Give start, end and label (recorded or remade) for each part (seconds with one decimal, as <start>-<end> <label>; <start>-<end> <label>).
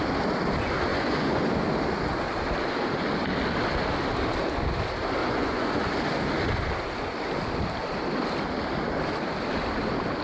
0.0-0.9 recorded; 0.9-1.4 remade; 1.4-5.2 recorded; 5.2-5.9 remade; 5.9-10.2 recorded